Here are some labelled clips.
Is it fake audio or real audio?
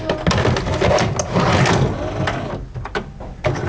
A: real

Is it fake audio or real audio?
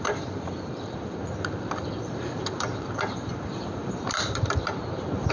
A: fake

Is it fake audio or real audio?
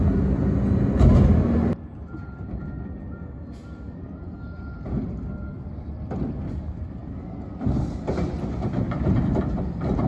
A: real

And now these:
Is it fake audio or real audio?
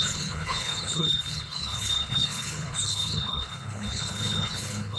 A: fake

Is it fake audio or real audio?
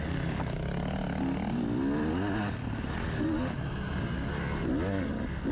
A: real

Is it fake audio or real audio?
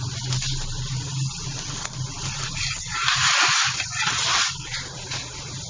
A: real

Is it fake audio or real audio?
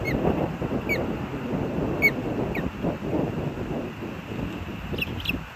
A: real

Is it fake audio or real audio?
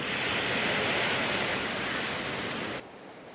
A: real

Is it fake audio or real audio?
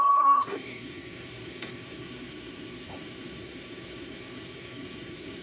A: fake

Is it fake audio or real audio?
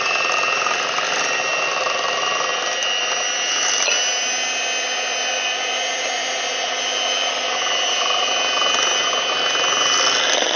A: real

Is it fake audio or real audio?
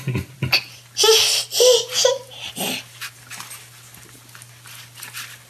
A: real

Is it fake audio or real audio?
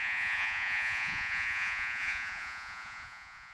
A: fake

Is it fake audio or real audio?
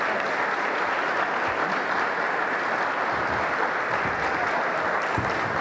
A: real